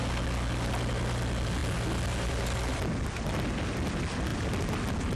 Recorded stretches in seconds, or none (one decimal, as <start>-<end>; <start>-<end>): 0.0-5.2